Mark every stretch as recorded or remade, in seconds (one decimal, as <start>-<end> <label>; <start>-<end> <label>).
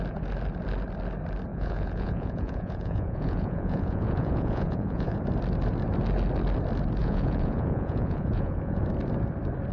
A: 0.0-1.5 recorded; 1.5-5.2 remade; 5.2-7.0 recorded; 7.0-8.8 remade; 8.8-9.7 recorded